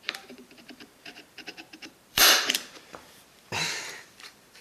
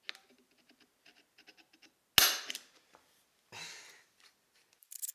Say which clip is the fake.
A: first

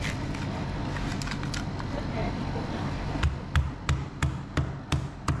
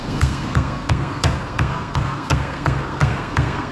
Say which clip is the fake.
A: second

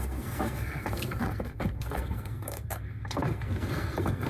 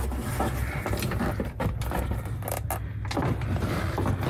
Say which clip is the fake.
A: first